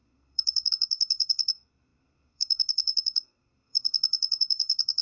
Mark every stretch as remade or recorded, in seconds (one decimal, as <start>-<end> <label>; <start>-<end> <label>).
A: 0.0-5.0 remade